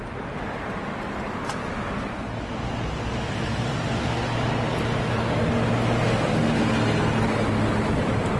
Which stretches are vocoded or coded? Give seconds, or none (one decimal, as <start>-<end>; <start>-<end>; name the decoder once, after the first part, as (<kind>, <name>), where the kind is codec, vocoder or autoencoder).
none

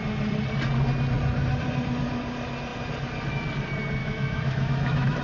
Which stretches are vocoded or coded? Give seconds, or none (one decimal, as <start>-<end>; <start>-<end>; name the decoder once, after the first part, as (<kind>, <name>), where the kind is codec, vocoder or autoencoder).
4.0-5.2 (autoencoder, DAC-VAE)

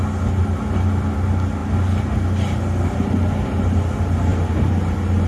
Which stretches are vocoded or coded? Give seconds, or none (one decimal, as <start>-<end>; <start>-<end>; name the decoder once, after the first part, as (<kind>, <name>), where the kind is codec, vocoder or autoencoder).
none

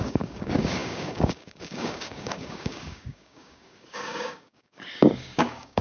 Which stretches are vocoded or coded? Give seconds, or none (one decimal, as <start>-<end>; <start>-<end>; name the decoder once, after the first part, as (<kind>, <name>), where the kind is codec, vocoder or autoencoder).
0.0-5.8 (codec, DAC)

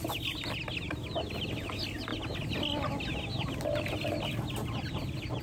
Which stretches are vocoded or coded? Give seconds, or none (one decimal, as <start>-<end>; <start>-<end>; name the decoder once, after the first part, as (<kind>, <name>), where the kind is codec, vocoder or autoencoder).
none

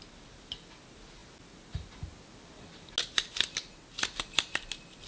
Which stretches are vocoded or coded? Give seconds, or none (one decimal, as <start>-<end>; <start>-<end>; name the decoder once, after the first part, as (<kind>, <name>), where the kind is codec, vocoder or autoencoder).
none

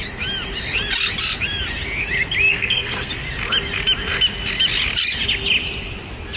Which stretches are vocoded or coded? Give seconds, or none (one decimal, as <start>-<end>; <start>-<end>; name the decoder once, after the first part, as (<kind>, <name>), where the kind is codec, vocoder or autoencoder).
2.5-3.1 (codec, SNAC)

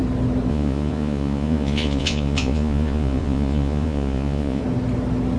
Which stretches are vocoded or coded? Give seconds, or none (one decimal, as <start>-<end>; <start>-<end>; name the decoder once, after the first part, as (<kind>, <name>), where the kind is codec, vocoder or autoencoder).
0.5-4.6 (vocoder, Vocos)